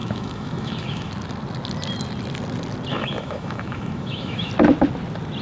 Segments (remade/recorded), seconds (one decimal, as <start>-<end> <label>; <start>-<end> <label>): 0.0-1.1 remade; 1.1-2.9 recorded; 2.9-4.5 remade; 4.5-5.4 recorded